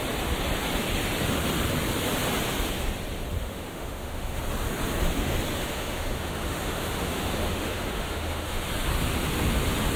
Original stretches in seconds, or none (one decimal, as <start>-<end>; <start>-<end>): 0.0-3.4; 4.4-5.5; 8.7-10.0